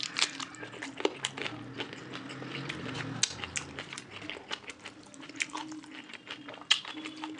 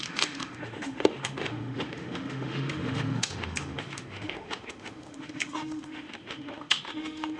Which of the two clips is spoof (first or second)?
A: second